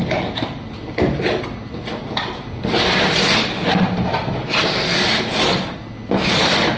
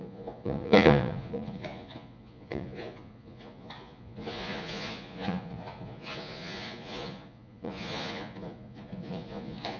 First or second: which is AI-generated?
second